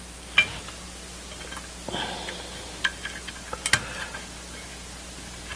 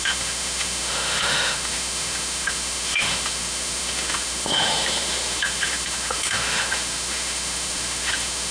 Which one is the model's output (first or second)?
second